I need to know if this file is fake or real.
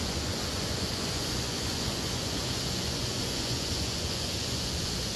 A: fake